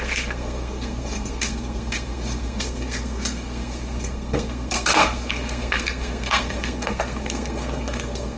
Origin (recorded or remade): remade